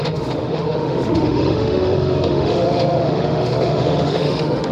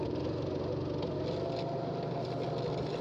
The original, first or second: second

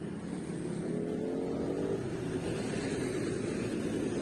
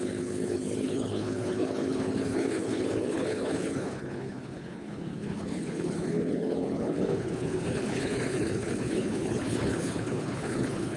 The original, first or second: first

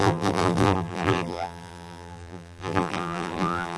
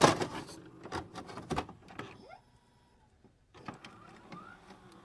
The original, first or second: second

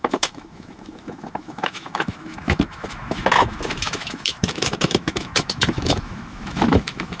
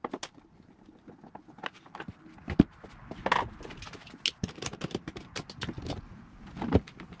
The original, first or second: second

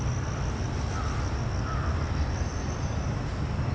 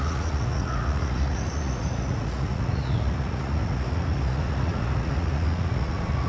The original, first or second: first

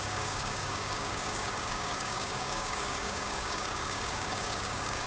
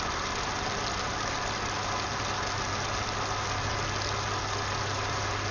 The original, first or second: second